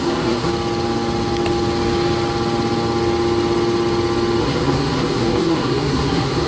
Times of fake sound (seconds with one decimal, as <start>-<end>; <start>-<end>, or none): 0.0-0.5; 4.4-6.5